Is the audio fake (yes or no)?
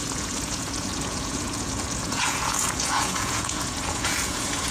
yes